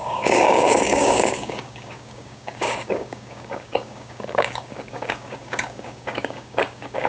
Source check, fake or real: fake